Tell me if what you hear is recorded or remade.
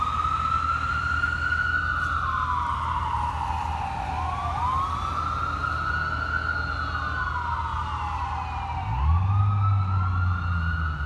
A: recorded